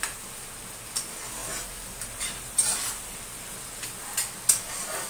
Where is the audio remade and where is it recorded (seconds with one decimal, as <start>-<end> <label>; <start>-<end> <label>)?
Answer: 0.0-5.1 recorded